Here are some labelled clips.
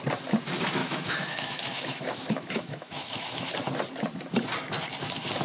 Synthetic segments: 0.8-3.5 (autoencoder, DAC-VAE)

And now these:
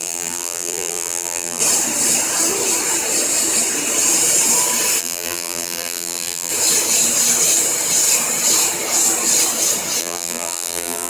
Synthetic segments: 0.0-1.6 (vocoder, BigVGAN v2); 5.0-6.5; 10.0-11.1